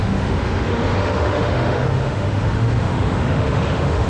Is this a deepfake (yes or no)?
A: yes